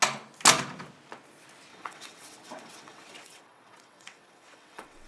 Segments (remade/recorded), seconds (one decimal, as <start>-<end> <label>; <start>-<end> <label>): 0.0-1.7 recorded; 1.7-5.1 remade